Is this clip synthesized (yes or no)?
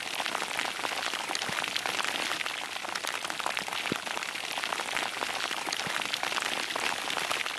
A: no